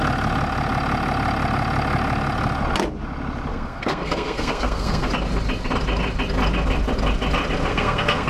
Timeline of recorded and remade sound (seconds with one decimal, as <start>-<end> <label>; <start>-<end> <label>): 0.0-3.5 recorded; 3.5-5.1 remade; 5.1-7.7 recorded; 7.7-8.3 remade